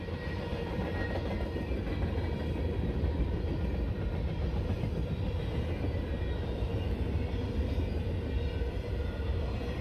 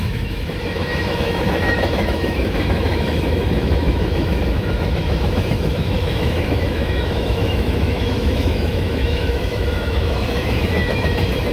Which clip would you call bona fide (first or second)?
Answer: first